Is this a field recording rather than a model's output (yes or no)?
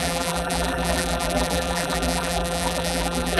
no